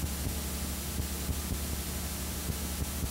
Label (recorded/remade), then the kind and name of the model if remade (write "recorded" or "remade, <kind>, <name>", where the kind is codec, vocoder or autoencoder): recorded